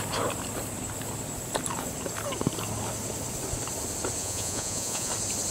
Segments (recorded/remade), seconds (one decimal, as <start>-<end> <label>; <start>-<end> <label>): 0.0-4.2 recorded; 4.2-5.1 remade; 5.1-5.5 recorded